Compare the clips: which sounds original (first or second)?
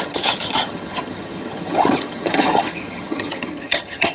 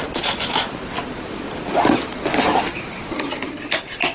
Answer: second